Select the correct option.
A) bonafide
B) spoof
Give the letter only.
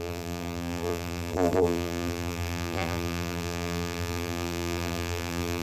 B